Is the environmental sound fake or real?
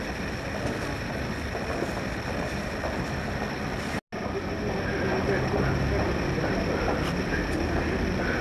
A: real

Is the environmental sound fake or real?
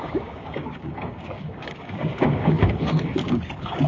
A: fake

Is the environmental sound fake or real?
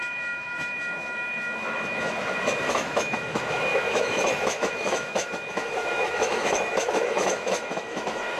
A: fake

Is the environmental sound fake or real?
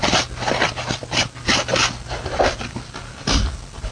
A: real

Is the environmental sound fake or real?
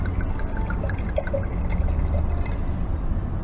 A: real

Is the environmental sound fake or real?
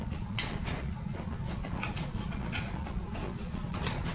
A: fake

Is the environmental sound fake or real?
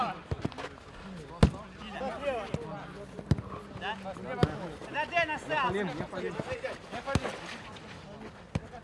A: real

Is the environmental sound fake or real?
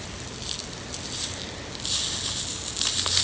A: real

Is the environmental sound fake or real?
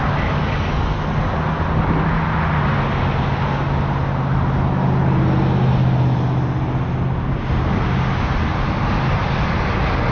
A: real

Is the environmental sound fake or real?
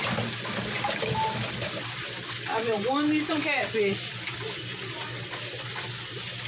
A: real